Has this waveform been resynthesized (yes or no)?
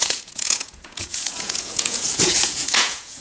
yes